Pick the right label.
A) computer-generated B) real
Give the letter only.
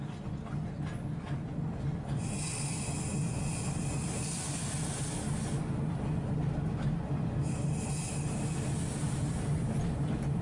B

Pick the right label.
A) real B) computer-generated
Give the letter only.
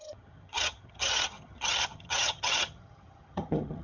B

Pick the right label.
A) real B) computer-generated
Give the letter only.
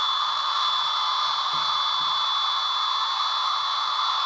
A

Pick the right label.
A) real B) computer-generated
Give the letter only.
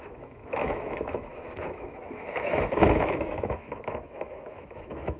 B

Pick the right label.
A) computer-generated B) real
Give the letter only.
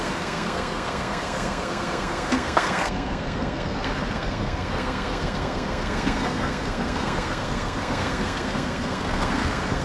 A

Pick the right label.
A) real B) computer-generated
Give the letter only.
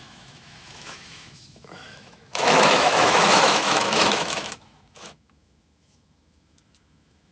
B